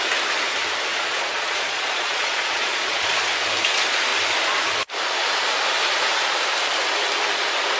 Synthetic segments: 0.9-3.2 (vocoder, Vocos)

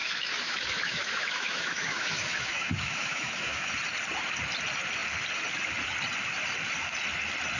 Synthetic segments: 0.0-3.7 (autoencoder, DAC-VAE)

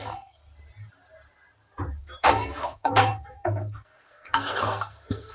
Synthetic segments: 0.0-0.4 (codec, SNAC); 2.0-5.3

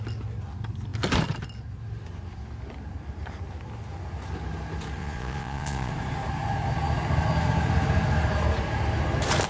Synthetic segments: 5.0-5.9 (vocoder, Vocos)